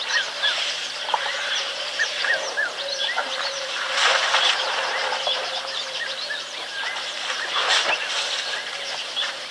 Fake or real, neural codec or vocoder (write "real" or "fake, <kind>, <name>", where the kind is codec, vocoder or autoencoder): fake, vocoder, BigVGAN v2